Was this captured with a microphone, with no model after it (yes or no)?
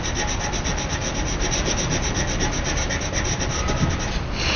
yes